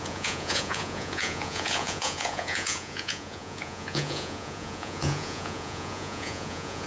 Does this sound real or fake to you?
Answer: fake